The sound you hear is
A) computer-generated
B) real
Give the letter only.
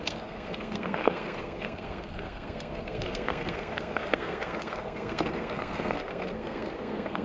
A